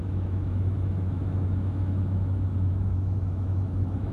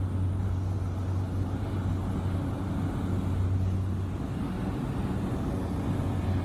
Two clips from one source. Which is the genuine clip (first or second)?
second